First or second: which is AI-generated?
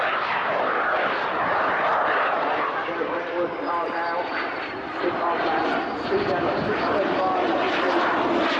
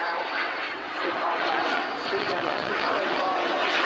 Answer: second